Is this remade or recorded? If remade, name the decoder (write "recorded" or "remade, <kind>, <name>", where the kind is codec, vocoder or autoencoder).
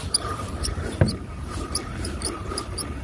remade, vocoder, BigVGAN v2